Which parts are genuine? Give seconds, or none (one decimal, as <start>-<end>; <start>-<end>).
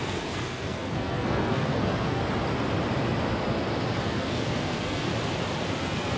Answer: 2.2-4.0; 5.1-5.8